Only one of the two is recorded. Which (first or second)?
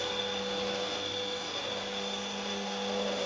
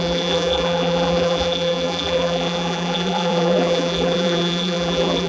first